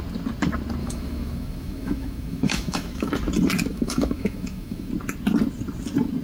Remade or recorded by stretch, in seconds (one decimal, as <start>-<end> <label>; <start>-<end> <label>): 0.0-0.8 recorded; 0.8-3.1 remade; 3.1-3.7 recorded; 3.7-4.9 remade; 4.9-6.2 recorded